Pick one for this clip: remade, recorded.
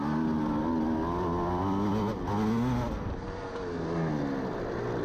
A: recorded